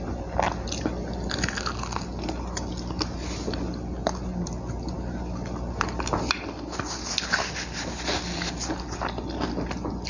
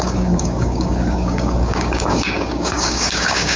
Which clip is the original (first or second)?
first